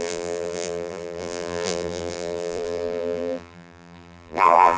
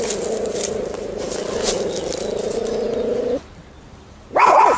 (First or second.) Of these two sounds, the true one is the second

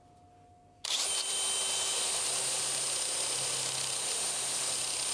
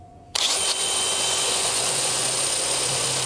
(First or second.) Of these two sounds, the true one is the first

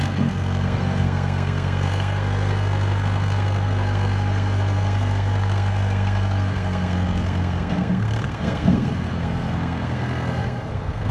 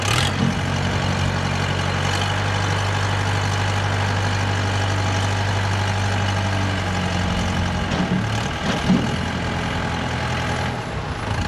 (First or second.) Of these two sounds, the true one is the second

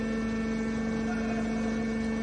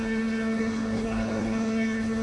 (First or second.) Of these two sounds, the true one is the first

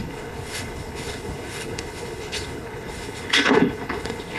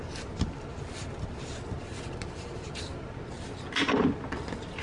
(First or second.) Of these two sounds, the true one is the second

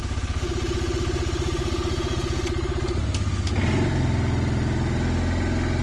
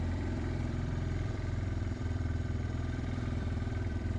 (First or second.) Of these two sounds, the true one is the first